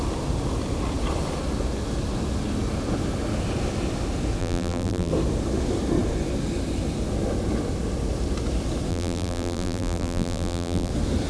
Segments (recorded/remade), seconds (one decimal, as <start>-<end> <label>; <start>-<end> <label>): 0.0-4.4 recorded; 4.4-5.1 remade; 5.1-8.9 recorded; 8.9-10.9 remade; 10.9-11.3 recorded